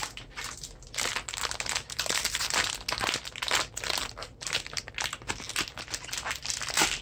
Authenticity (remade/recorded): recorded